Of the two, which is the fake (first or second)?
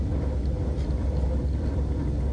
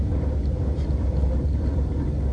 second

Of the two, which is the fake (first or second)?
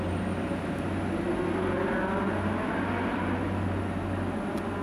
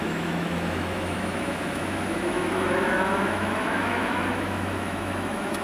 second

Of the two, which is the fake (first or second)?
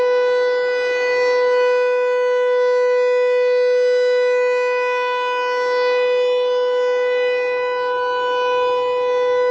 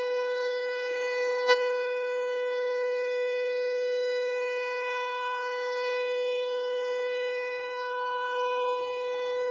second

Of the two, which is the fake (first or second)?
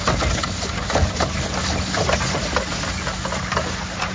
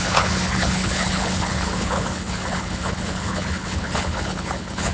second